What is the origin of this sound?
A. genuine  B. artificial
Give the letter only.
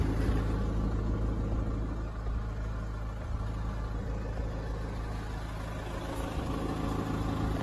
A